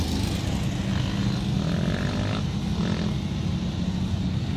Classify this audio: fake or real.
real